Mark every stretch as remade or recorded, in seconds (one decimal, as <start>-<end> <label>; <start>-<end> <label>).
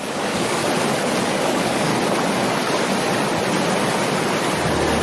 0.0-0.6 remade; 0.6-1.3 recorded; 1.3-1.9 remade; 1.9-5.0 recorded